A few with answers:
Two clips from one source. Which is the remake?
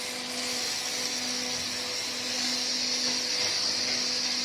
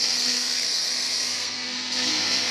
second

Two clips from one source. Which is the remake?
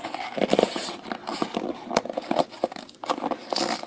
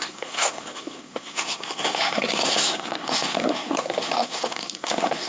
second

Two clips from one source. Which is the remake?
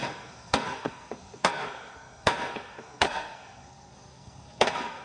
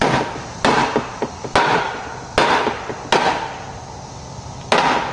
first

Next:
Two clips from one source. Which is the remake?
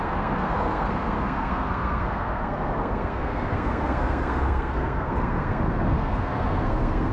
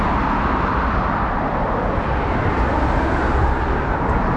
first